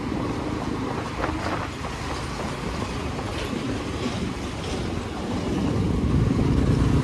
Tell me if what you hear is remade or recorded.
recorded